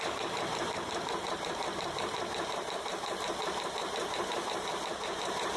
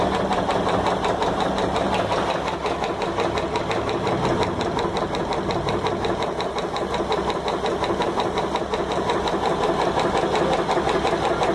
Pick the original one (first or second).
second